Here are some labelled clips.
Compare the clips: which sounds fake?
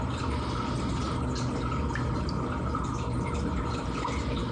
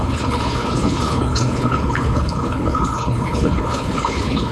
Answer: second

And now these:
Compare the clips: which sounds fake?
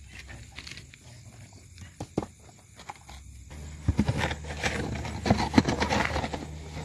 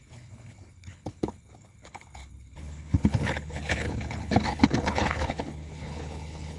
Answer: second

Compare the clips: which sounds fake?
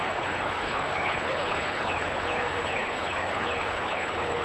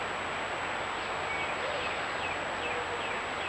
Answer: first